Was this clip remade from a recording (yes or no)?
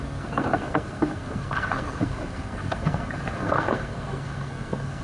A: yes